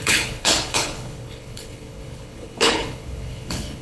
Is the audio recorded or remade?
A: remade